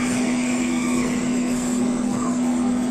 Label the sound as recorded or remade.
remade